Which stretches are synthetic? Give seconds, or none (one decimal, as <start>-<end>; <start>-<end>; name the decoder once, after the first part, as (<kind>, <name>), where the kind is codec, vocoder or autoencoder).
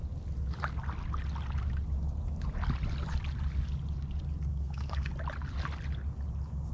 4.5-5.1 (codec, SNAC)